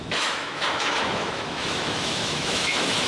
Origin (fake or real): fake